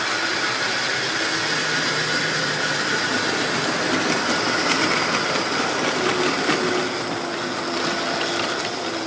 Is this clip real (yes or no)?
yes